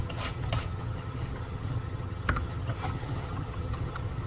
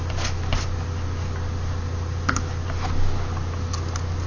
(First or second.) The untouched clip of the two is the second